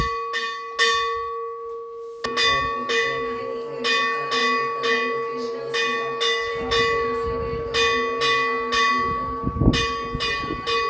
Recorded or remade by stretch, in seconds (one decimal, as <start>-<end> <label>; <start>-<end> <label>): 0.0-10.9 recorded